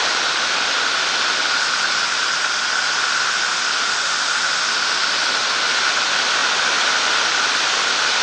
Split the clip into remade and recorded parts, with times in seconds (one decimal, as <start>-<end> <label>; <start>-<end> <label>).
0.0-8.2 recorded